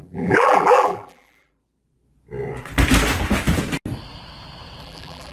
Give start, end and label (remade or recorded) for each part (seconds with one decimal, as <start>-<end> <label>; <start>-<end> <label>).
0.0-1.6 remade; 1.6-4.8 recorded; 4.8-5.3 remade